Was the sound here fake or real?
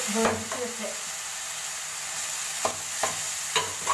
real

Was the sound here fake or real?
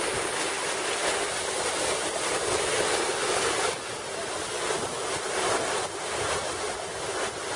real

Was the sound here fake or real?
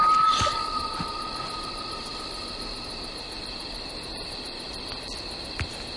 real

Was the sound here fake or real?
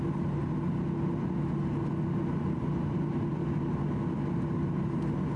real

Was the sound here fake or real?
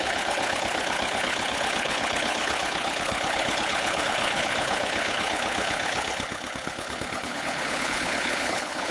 fake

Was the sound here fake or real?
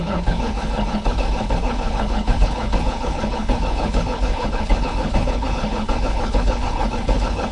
fake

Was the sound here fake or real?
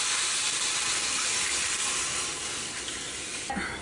real